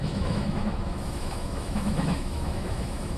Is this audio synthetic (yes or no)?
yes